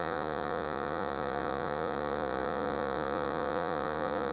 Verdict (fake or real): fake